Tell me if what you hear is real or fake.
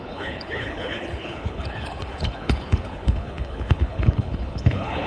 fake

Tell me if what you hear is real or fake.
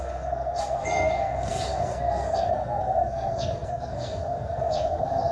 fake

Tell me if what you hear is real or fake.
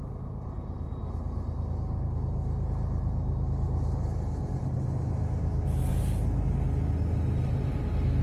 real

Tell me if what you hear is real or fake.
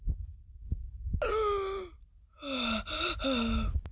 real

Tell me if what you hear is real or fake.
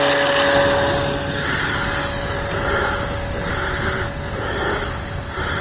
real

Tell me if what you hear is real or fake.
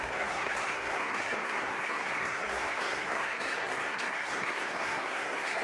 fake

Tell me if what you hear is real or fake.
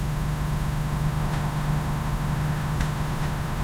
fake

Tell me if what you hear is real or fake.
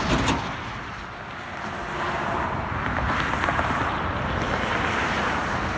real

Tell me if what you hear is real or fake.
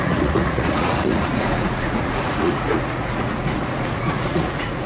fake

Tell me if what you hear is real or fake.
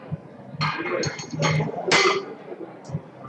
real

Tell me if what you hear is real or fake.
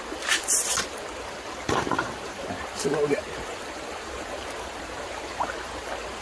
fake